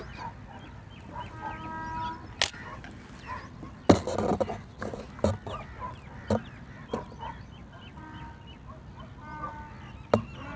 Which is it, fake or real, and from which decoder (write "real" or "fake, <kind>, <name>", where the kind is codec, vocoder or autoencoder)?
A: real